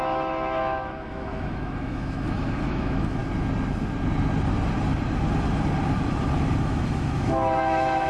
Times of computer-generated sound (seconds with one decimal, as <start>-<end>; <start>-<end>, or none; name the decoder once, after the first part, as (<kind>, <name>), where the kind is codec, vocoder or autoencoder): 0.0-3.2 (autoencoder, DAC-VAE); 6.6-8.1